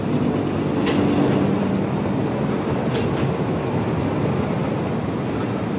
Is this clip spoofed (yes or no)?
no